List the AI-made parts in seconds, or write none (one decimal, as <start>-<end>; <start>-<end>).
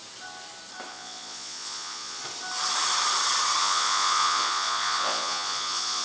0.9-2.2; 3.6-6.0